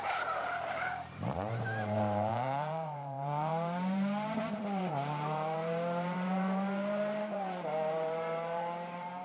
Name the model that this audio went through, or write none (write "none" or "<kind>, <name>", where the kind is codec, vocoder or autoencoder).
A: vocoder, BigVGAN v2